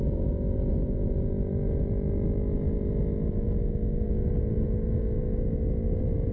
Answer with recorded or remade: recorded